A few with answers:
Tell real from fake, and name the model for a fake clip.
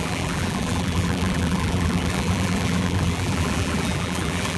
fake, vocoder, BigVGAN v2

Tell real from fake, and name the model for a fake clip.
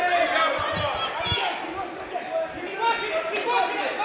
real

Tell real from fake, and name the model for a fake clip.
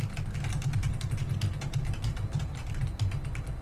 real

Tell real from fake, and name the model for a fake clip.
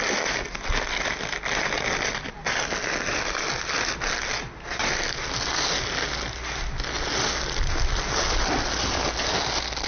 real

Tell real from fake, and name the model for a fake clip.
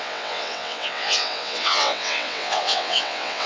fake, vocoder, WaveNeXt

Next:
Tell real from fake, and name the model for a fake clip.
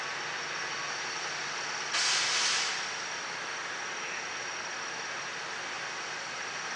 real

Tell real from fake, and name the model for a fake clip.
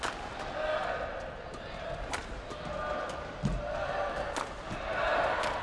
real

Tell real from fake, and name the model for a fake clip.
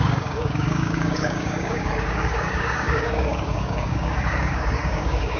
fake, codec, DAC